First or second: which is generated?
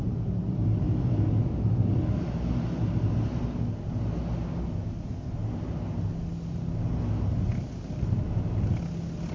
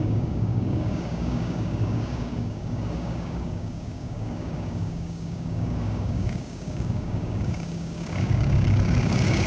second